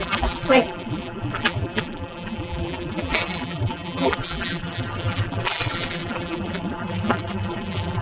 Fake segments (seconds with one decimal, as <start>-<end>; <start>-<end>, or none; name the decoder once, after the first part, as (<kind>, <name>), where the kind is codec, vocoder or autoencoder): 0.0-8.0 (vocoder, BigVGAN v2)